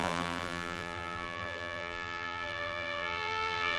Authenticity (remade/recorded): remade